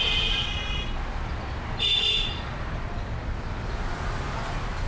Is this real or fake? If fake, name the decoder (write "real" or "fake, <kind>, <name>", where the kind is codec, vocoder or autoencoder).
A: real